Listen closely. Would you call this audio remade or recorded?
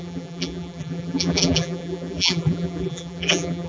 remade